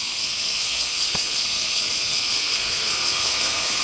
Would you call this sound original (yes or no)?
no